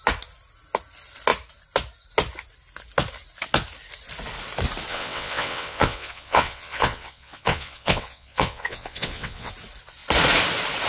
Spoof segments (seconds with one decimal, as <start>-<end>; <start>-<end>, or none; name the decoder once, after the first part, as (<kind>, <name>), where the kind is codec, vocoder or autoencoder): 4.9-9.5 (vocoder, WaveNeXt)